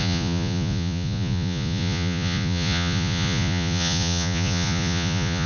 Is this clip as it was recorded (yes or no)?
no